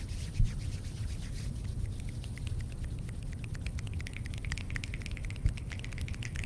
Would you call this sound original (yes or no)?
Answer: yes